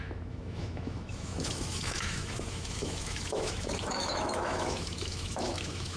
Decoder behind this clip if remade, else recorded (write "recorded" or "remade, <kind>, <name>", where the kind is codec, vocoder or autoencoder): remade, autoencoder, DAC-VAE